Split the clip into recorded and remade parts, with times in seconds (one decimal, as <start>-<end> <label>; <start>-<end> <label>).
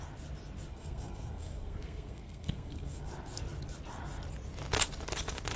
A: 0.0-0.7 recorded; 0.7-3.1 remade; 3.1-5.6 recorded